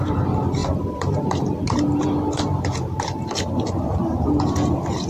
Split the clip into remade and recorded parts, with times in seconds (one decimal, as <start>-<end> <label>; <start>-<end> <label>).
0.0-5.1 remade